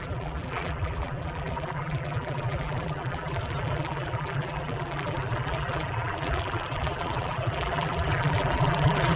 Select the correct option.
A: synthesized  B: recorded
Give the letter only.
A